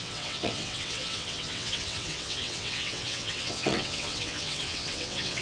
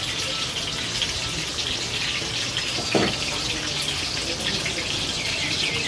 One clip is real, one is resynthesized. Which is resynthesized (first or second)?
first